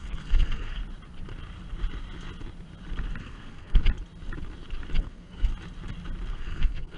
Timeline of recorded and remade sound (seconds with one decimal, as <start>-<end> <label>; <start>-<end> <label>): 0.0-0.8 remade; 0.8-3.2 recorded; 3.2-3.8 remade; 3.8-5.0 recorded; 5.0-5.5 remade; 5.5-6.3 recorded; 6.3-7.0 remade